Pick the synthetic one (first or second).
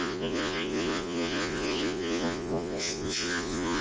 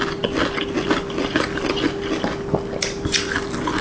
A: first